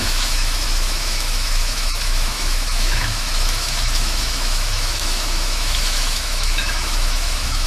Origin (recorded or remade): remade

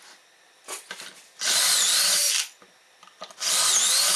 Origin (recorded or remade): recorded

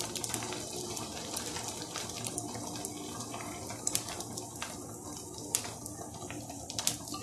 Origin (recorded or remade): recorded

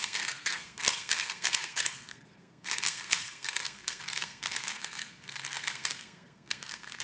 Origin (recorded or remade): remade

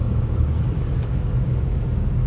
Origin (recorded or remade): remade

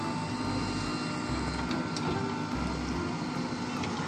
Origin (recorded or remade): recorded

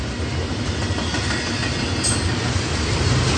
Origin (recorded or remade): recorded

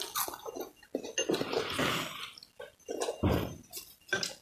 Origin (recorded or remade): recorded